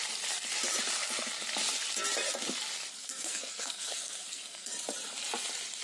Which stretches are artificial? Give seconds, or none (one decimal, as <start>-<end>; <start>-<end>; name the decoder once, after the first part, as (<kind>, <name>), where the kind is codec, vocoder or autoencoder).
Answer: 3.0-4.7 (codec, SNAC)